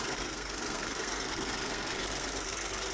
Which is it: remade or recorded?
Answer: remade